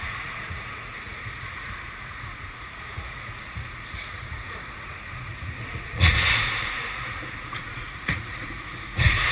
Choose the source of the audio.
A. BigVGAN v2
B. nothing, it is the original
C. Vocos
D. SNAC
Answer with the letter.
C